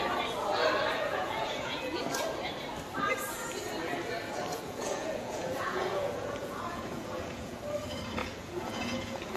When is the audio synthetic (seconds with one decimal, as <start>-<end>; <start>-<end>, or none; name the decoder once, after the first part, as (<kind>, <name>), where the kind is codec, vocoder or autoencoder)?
0.9-2.0 (vocoder, Vocos); 4.5-7.6; 8.2-9.4